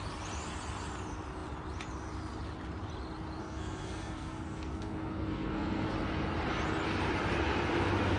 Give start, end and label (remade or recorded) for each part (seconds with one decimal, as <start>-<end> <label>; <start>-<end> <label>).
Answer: 0.0-3.4 recorded; 3.4-5.9 remade; 5.9-8.2 recorded